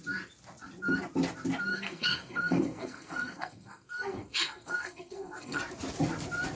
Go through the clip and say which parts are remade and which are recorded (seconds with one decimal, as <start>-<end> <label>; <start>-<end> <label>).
0.0-1.7 recorded; 1.7-5.6 remade; 5.6-6.5 recorded